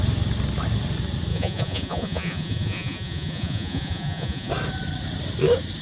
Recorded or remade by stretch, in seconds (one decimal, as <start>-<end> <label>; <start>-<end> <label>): 0.0-1.3 recorded; 1.3-4.5 remade; 4.5-5.8 recorded